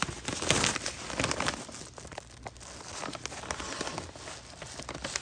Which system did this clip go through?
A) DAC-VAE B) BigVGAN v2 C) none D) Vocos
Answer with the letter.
C